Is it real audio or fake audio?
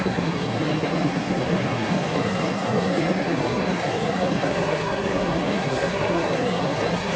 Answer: fake